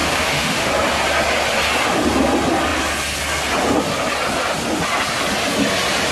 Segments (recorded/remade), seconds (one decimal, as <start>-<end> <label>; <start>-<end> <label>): 0.0-0.7 remade; 0.7-6.1 recorded